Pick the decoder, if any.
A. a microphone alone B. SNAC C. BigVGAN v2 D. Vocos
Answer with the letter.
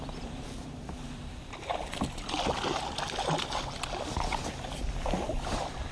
A